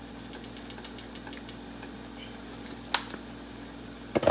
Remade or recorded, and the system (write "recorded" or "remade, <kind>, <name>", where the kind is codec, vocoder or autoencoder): recorded